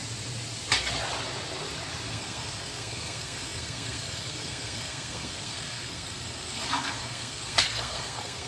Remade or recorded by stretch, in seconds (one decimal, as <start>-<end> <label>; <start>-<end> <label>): 0.0-2.1 recorded; 2.1-8.5 remade